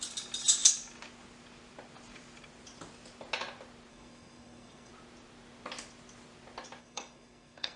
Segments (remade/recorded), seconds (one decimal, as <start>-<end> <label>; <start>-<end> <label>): 0.0-3.9 recorded; 3.9-4.9 remade; 4.9-6.8 recorded; 6.8-7.8 remade